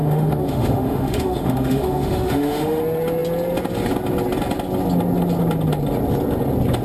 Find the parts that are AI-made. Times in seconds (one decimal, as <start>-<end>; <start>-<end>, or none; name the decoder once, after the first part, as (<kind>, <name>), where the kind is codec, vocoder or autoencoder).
0.0-2.8 (autoencoder, DAC-VAE)